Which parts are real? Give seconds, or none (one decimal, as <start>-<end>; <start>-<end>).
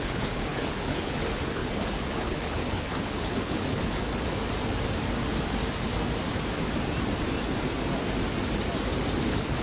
4.1-9.2